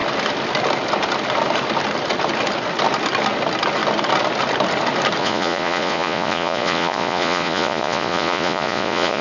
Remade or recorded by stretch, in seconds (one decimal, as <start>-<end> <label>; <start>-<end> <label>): 0.0-5.2 recorded; 5.2-9.2 remade